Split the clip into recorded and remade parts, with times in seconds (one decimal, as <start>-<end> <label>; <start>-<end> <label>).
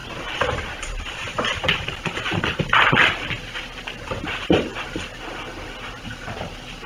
0.0-2.4 remade; 2.4-6.9 recorded